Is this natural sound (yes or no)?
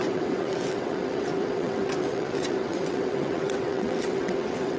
no